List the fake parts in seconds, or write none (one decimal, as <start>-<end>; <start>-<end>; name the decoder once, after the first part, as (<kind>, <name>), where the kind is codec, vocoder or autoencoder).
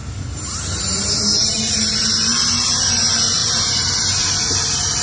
0.0-1.7 (vocoder, BigVGAN v2); 3.4-4.4